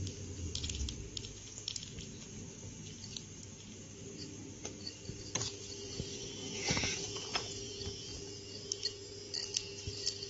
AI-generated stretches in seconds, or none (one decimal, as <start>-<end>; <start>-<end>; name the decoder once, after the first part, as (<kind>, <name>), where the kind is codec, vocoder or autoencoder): 6.4-7.7 (vocoder, Vocos)